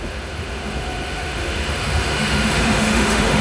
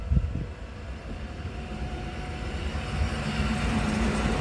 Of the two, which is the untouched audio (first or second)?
second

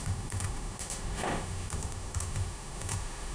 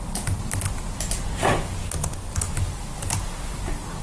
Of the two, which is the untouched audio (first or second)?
second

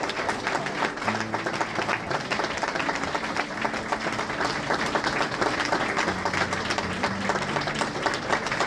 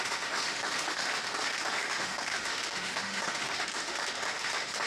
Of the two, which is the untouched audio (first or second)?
first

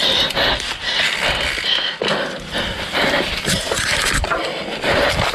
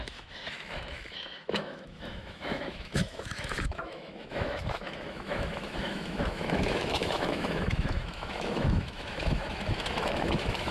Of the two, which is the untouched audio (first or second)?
first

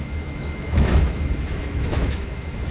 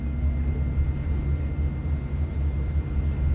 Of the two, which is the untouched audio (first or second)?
second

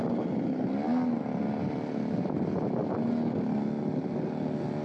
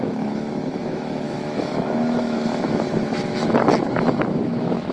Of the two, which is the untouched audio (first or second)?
first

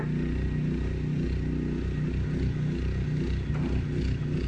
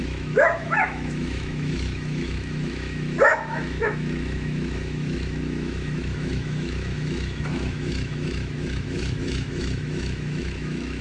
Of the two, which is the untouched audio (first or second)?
first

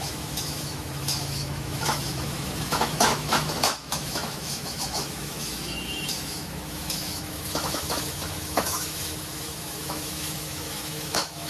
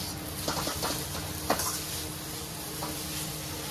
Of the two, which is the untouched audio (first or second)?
second